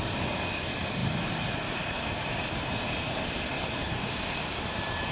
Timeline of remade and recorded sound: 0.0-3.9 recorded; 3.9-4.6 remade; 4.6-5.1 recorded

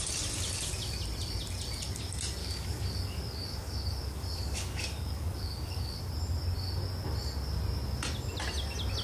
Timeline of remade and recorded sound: 0.0-2.4 recorded; 2.4-6.0 remade; 6.0-9.0 recorded

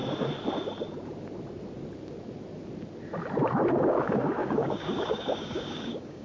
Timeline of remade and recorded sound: 0.0-3.7 recorded; 3.7-6.2 remade

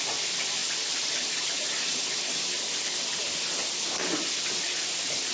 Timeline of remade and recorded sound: 0.0-5.3 recorded

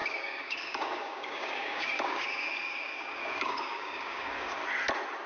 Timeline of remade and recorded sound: 0.0-4.6 remade; 4.6-5.3 recorded

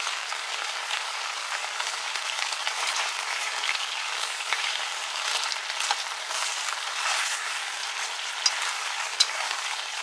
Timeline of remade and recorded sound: 0.0-5.3 remade; 5.3-6.2 recorded; 6.2-7.8 remade; 7.8-8.6 recorded; 8.6-10.0 remade

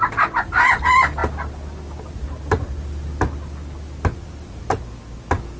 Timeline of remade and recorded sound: 0.0-5.6 recorded

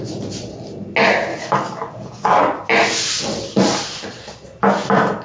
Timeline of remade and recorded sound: 0.0-1.3 recorded; 1.3-2.4 remade; 2.4-5.2 recorded